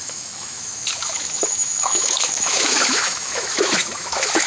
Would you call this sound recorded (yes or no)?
no